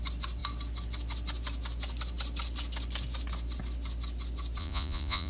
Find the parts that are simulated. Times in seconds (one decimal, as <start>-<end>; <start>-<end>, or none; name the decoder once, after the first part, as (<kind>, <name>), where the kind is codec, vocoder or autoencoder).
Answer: 4.6-5.3 (vocoder, Vocos)